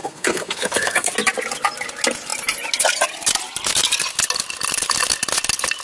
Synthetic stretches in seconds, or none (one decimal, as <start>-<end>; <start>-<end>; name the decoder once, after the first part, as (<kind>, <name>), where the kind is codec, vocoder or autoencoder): 0.0-1.1 (codec, SNAC)